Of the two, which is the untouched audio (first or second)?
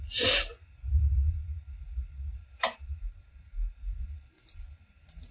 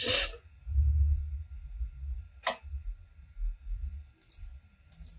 second